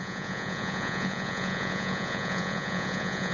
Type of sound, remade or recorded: remade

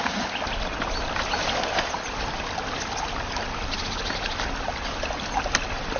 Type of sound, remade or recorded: recorded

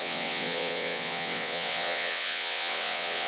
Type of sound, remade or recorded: remade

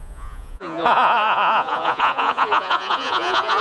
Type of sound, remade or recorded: remade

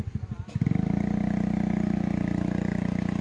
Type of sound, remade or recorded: recorded